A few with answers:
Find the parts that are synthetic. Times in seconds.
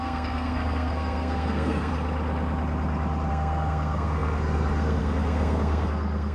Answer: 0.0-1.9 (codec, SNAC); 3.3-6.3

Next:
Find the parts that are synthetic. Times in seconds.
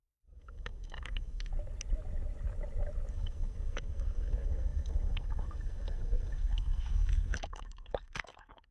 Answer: 0.0-1.5 (codec, SNAC); 3.1-8.7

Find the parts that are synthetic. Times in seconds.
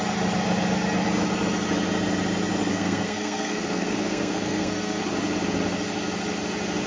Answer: 2.7-5.0 (codec, SNAC)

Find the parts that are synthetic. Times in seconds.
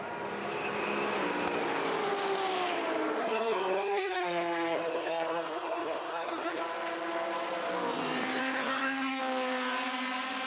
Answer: 3.2-6.6 (codec, SNAC); 8.4-9.2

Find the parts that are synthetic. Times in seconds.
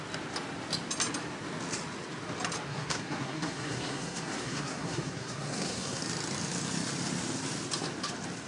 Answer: 2.7-6.0 (codec, SNAC)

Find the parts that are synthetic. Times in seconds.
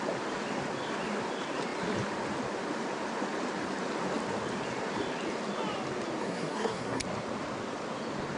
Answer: 6.2-7.0 (codec, SNAC)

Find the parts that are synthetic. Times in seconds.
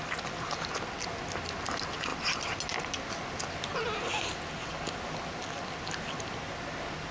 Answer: none